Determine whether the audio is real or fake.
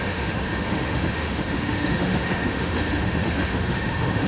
fake